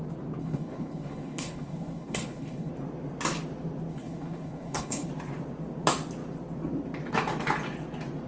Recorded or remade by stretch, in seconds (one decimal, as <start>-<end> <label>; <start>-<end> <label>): 0.0-0.4 recorded; 0.4-2.7 remade; 2.7-3.9 recorded; 3.9-5.1 remade; 5.1-8.3 recorded